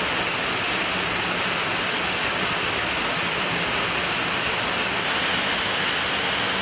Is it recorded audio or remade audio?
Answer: recorded